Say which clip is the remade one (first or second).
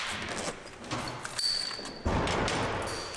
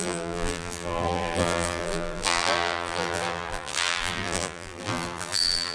second